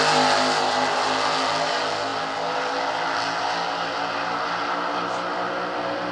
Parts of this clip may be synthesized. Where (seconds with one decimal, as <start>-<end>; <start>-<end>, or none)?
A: none